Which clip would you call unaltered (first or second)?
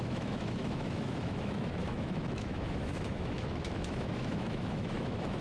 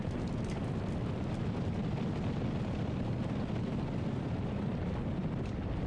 second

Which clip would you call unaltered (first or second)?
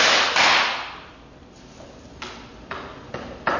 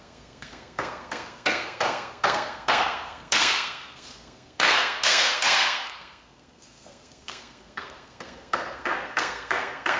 first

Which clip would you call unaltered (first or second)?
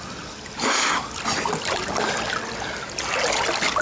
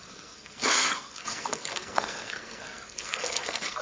first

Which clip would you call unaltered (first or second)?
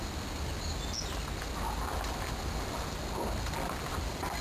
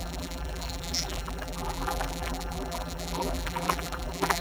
first